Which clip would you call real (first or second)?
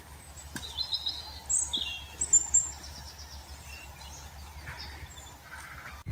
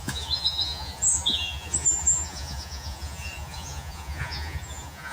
first